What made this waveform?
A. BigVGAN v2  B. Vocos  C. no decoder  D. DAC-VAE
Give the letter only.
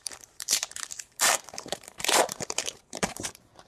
A